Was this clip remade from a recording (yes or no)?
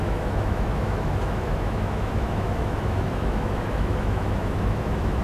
yes